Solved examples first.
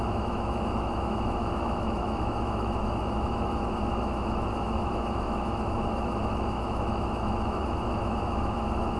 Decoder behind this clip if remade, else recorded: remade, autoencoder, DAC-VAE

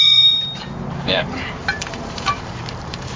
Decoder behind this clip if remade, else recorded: remade, vocoder, BigVGAN v2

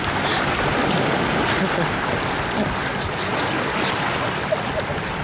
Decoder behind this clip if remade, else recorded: recorded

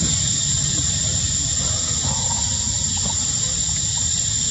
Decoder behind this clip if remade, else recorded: recorded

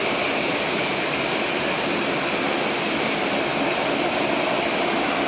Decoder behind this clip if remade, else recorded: recorded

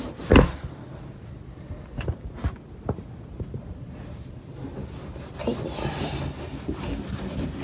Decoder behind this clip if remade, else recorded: recorded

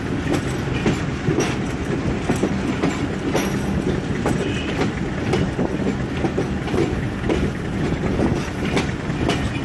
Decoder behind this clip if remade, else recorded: recorded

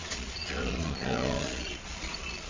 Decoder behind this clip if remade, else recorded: remade, vocoder, Vocos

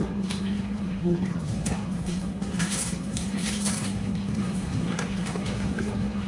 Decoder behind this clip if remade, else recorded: remade, codec, SNAC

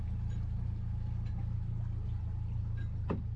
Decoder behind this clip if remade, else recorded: recorded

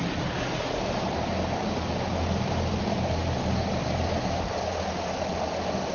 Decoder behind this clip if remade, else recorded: recorded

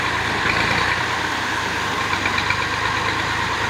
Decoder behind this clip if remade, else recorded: recorded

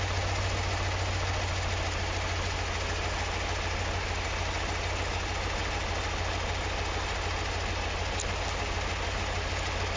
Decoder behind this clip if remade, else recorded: recorded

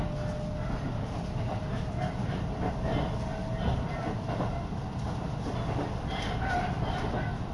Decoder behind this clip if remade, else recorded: recorded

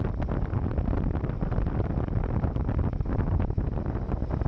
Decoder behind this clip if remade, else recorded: recorded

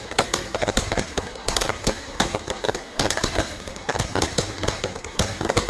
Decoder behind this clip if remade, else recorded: remade, codec, SNAC